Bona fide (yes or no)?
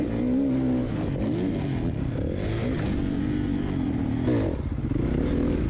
yes